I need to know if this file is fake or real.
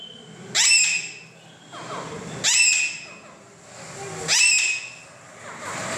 real